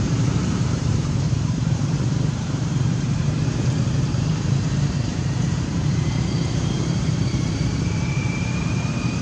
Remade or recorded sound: remade